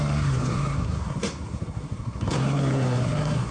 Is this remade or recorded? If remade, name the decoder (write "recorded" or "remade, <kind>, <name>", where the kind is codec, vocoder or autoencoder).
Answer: remade, codec, SNAC